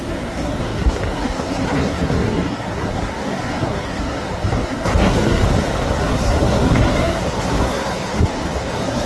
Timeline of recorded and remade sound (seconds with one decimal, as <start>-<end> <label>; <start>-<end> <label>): 0.0-5.4 remade; 5.4-6.0 recorded; 6.0-9.1 remade